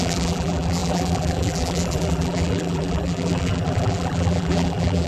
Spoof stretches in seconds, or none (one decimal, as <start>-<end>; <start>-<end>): 0.0-5.1